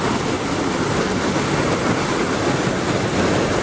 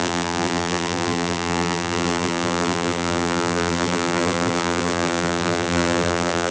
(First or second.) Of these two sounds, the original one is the first